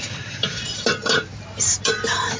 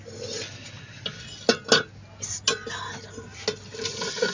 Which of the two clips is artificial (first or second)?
first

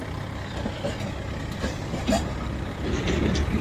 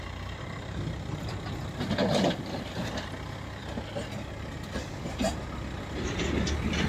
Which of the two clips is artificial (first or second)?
first